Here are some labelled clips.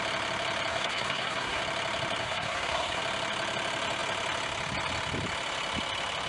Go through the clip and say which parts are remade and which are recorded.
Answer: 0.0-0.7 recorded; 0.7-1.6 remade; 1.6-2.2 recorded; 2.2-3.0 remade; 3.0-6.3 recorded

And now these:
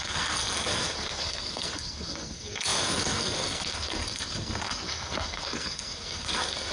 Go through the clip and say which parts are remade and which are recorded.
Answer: 0.0-6.7 remade

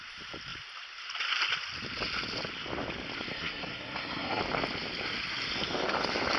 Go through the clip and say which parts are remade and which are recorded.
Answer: 0.0-3.3 recorded; 3.3-4.4 remade; 4.4-6.4 recorded

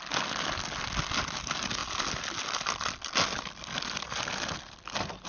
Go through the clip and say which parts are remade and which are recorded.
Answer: 0.0-5.3 recorded

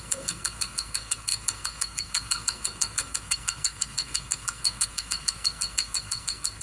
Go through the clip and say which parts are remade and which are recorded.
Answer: 0.0-6.6 remade

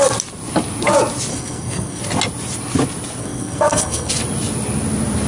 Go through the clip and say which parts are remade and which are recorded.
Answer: 0.0-1.3 recorded; 1.3-2.0 remade; 2.0-3.2 recorded; 3.2-4.1 remade; 4.1-5.3 recorded